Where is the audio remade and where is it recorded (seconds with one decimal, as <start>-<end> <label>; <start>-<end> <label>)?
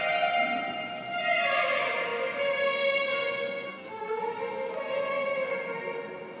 0.0-3.7 recorded; 3.7-4.2 remade; 4.2-6.4 recorded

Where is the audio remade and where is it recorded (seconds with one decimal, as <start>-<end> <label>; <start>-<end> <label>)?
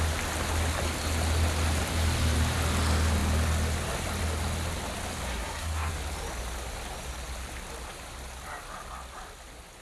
0.0-5.3 recorded; 5.3-5.9 remade; 5.9-9.8 recorded